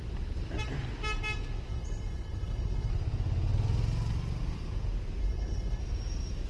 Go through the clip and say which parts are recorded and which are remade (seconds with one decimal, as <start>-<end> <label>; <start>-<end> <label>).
0.0-1.7 recorded; 1.7-2.9 remade; 2.9-5.2 recorded; 5.2-5.8 remade; 5.8-6.5 recorded